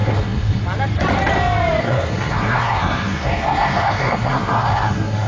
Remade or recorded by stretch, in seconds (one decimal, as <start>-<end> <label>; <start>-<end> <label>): 0.0-0.6 remade; 0.6-1.8 recorded; 1.8-5.3 remade